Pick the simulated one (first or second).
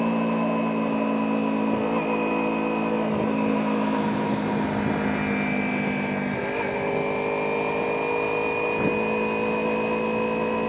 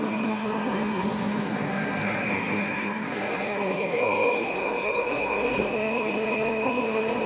second